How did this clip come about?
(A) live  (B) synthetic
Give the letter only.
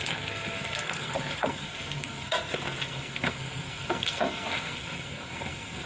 B